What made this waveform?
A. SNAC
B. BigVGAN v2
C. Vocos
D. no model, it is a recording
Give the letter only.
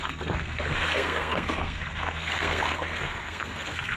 A